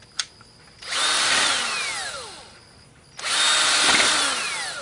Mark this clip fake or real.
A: real